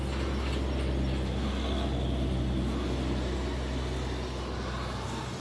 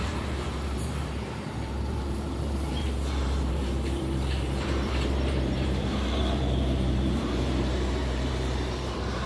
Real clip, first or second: first